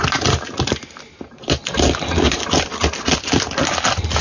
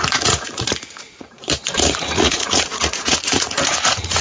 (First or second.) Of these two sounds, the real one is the first